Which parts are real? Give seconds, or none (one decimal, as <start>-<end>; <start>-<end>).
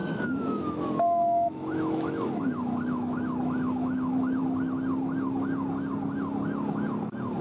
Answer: 4.4-7.4